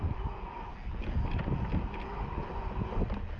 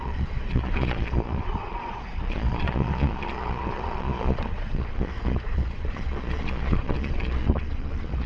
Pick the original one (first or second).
first